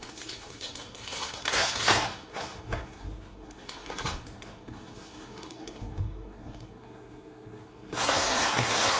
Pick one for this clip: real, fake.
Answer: fake